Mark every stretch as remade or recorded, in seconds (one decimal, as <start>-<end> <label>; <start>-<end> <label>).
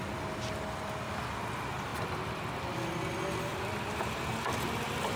0.0-5.2 recorded